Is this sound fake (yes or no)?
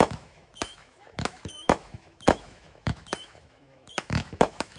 yes